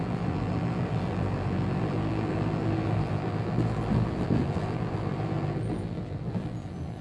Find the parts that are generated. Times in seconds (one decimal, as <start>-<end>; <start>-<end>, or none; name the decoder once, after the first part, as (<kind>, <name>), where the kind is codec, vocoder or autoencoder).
0.0-7.0 (vocoder, BigVGAN v2)